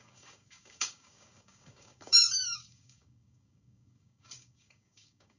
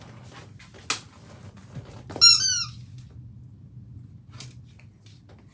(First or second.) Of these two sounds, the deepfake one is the first